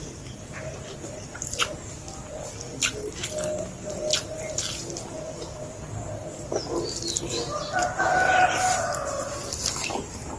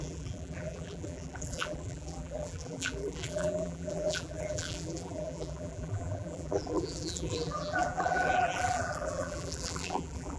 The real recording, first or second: first